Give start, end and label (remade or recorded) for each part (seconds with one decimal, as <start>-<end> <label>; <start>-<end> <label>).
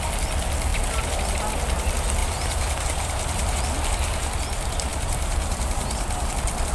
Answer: 0.0-2.2 recorded; 2.2-3.6 remade; 3.6-4.9 recorded; 4.9-6.3 remade; 6.3-6.7 recorded